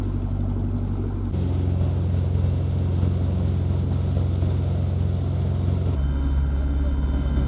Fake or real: real